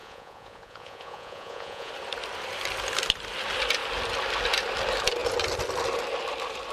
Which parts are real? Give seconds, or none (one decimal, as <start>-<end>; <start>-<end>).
1.9-6.7